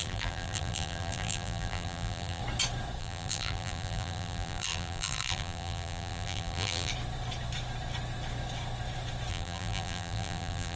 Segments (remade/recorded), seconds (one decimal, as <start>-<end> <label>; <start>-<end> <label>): 0.0-2.4 remade; 2.4-3.0 recorded; 3.0-6.9 remade; 6.9-9.3 recorded; 9.3-10.8 remade